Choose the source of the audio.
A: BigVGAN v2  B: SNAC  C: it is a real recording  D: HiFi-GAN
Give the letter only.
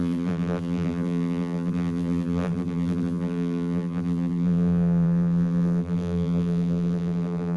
A